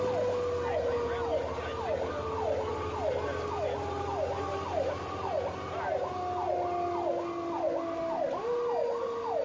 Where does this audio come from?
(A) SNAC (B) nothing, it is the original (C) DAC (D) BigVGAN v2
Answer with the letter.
B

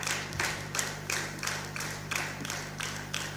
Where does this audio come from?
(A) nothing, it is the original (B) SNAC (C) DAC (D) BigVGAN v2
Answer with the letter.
D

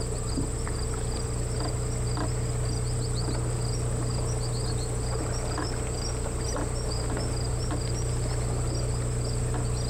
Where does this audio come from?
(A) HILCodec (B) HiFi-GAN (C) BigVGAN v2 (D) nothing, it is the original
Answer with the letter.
D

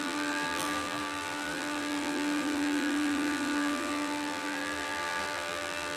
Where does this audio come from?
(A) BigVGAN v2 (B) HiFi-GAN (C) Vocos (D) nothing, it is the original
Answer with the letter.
A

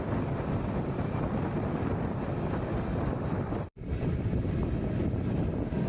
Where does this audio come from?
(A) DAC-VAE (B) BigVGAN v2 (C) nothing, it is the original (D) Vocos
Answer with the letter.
B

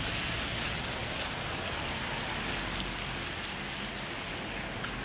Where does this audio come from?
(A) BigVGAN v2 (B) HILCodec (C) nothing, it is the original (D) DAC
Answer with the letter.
C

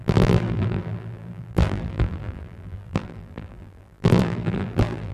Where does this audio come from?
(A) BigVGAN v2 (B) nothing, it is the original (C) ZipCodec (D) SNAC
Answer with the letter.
A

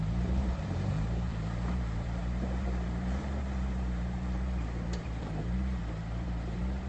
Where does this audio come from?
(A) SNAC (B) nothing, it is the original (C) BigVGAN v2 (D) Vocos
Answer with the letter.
C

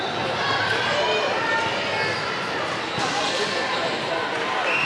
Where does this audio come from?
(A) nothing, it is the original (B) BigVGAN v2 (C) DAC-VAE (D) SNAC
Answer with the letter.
A